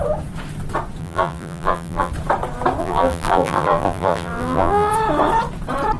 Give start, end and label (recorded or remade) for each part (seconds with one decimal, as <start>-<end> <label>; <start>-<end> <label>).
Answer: 0.0-1.0 recorded; 1.0-2.1 remade; 2.1-2.8 recorded; 2.8-4.9 remade; 4.9-6.0 recorded